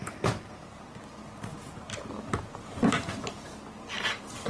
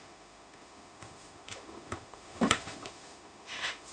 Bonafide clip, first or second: first